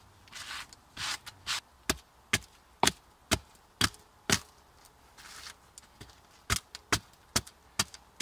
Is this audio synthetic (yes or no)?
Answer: no